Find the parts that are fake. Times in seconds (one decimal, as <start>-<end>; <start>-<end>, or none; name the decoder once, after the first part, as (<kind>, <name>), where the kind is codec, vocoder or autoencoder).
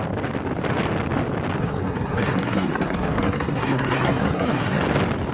1.6-4.8 (codec, SNAC)